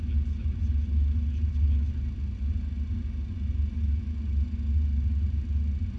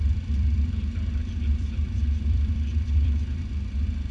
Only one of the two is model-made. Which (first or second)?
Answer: second